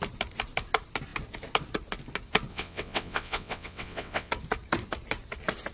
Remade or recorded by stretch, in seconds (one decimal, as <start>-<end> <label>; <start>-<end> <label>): 0.0-2.5 recorded; 2.5-4.3 remade; 4.3-5.7 recorded